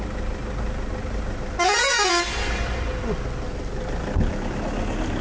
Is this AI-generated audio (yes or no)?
no